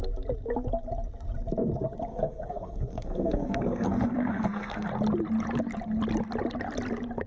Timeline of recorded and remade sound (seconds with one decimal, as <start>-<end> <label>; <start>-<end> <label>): 0.0-2.1 recorded; 2.1-4.9 remade; 4.9-7.3 recorded